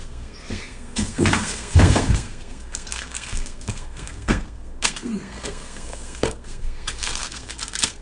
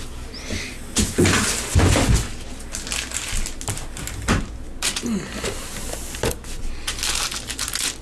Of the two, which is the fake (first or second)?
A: first